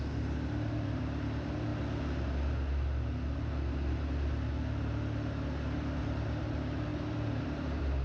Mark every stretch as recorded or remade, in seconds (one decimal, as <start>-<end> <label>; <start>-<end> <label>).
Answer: 0.0-1.7 remade; 1.7-4.9 recorded; 4.9-8.0 remade